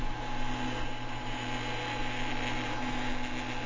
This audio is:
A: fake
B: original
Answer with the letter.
B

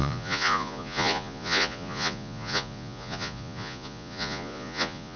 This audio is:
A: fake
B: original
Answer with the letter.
A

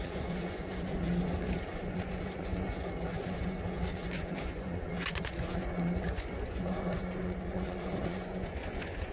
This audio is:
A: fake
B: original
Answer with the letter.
A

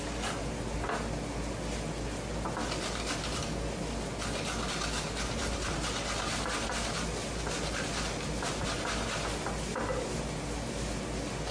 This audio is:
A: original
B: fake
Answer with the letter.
A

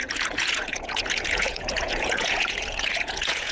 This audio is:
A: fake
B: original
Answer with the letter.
A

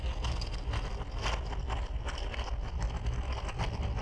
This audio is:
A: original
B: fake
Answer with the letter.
A